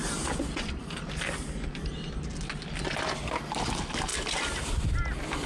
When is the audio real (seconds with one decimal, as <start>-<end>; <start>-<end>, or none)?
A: 0.0-5.5